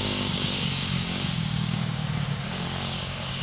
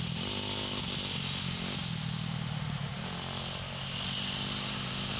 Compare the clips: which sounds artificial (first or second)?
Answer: first